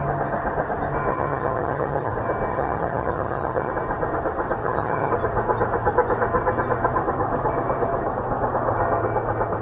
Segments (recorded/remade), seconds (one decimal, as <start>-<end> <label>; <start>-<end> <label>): 0.0-1.1 recorded; 1.1-2.1 remade; 2.1-2.5 recorded; 2.5-3.7 remade; 3.7-4.6 recorded; 4.6-5.1 remade; 5.1-9.6 recorded